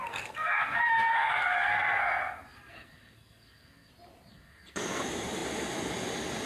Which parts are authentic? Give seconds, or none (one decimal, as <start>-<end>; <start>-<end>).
3.9-4.3; 5.0-6.5